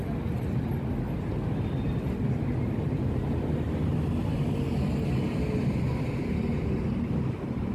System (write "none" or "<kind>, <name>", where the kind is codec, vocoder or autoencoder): none